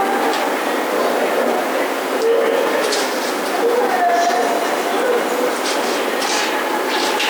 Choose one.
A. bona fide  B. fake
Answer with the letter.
A